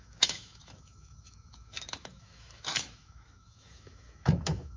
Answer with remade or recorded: remade